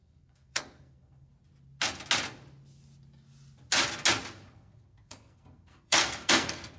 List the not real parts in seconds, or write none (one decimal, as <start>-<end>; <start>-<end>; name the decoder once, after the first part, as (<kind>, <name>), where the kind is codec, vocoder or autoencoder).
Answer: 0.0-1.3 (codec, SNAC); 4.5-6.8